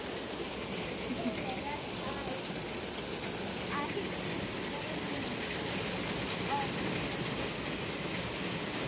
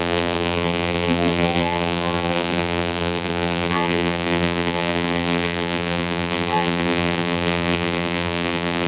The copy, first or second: second